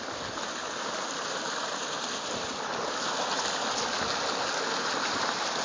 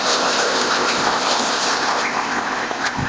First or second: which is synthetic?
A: second